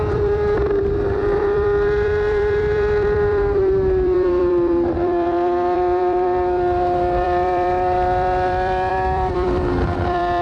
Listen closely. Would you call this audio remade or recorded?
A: remade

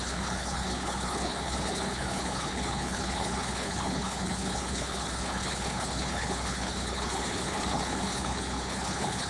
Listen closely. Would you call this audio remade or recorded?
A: remade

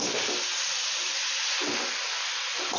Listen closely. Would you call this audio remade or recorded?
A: recorded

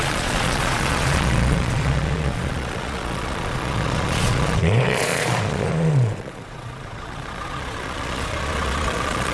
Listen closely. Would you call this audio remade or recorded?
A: remade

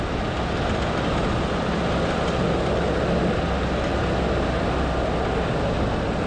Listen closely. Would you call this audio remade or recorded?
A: recorded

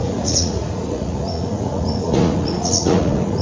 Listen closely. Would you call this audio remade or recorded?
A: remade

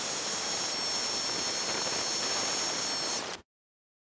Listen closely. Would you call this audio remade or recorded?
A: recorded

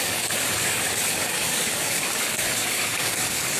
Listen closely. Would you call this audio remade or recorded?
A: remade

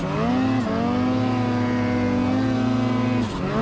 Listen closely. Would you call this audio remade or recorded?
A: recorded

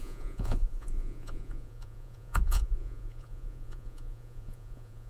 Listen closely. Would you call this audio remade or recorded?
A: remade